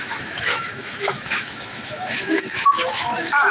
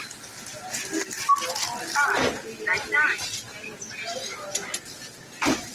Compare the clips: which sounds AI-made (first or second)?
first